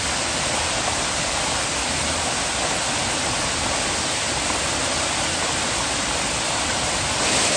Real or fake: real